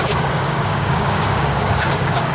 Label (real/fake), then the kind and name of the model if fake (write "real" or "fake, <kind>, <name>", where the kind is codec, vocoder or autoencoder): fake, codec, DAC